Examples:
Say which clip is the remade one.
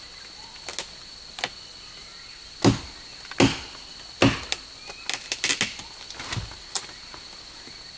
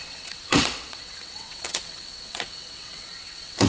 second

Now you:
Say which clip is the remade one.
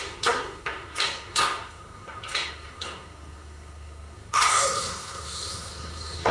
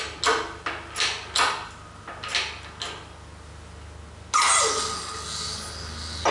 first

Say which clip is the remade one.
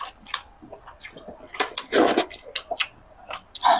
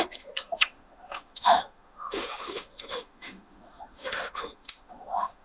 second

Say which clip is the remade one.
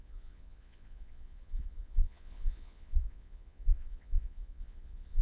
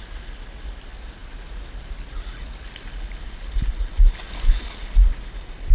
first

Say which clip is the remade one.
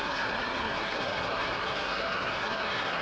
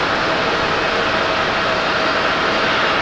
first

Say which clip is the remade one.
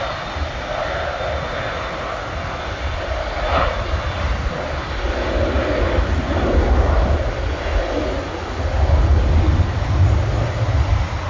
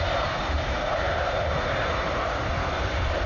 second